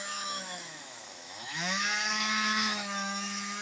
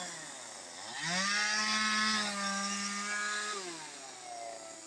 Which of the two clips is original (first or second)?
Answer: second